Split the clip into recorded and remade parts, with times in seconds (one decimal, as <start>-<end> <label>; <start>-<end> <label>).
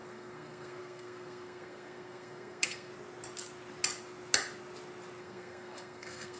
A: 0.0-2.9 remade; 2.9-5.2 recorded; 5.2-6.4 remade